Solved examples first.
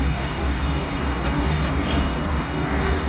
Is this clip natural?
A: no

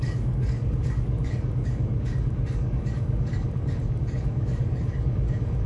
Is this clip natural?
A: no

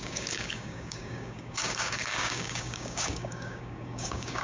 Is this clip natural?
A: no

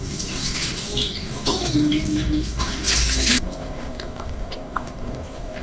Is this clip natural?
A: no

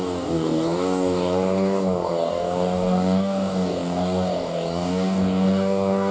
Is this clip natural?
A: no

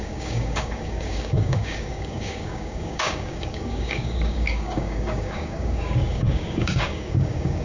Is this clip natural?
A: no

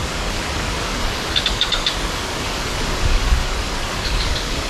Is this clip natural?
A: no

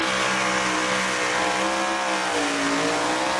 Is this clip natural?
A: yes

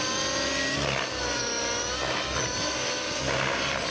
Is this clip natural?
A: yes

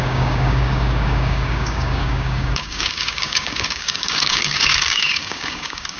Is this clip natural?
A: no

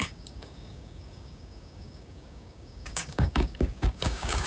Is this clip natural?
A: no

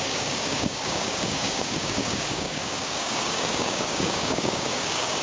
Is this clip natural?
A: no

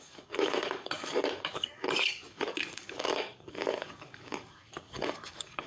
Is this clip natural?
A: no